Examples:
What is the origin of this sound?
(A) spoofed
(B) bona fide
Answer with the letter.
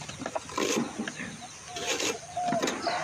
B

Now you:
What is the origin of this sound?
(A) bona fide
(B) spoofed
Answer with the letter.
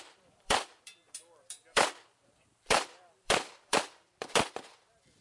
B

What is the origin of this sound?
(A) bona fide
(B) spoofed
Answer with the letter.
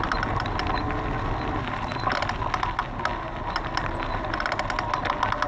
A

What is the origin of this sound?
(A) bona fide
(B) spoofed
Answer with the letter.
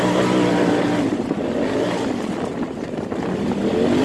A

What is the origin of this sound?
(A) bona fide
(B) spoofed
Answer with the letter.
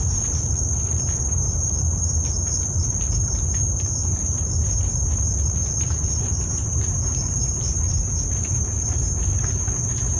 B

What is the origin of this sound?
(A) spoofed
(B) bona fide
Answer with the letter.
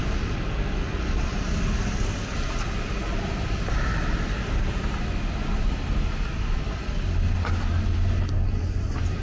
B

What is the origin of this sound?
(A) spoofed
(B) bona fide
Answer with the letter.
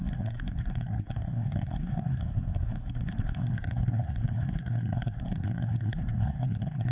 A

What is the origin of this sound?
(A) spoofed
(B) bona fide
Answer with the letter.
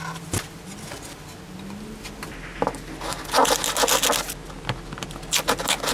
B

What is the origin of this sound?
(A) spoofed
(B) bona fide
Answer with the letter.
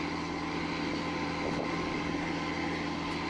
B